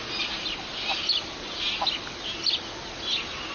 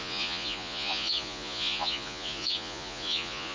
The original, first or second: first